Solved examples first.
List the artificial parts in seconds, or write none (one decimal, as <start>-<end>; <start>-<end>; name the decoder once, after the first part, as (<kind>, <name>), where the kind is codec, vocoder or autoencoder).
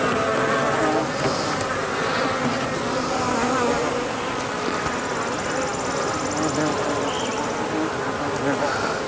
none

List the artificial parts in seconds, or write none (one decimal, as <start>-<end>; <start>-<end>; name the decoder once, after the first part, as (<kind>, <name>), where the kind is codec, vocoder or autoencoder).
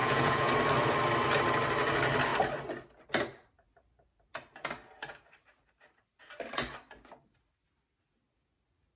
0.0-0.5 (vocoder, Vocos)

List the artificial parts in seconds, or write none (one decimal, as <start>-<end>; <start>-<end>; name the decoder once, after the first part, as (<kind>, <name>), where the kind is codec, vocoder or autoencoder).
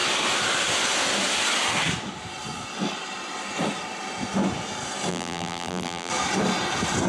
5.1-6.1 (vocoder, BigVGAN v2)